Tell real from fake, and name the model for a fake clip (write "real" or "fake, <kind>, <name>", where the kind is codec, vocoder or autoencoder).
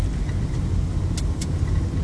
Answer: real